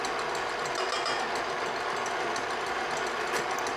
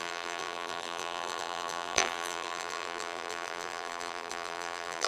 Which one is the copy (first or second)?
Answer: second